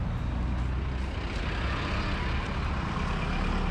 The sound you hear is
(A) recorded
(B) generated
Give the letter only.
A